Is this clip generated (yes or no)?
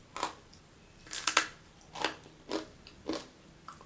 no